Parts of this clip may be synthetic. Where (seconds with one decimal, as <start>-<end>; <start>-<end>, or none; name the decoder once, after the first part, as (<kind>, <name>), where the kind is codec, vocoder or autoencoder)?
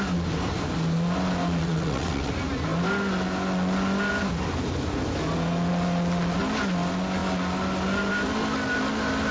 1.6-2.3 (vocoder, WaveNeXt)